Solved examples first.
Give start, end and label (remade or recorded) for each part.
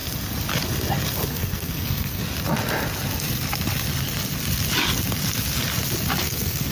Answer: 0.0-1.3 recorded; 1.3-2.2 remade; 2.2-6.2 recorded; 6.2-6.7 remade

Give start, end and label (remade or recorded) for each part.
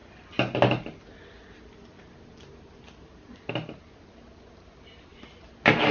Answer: 0.0-5.9 recorded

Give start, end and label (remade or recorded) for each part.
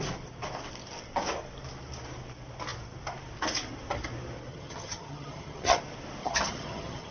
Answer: 0.0-4.5 recorded; 4.5-5.8 remade; 5.8-6.2 recorded; 6.2-7.1 remade